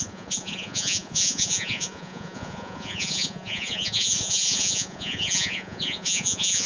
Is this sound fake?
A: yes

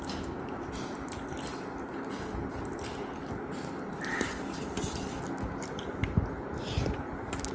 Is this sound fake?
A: no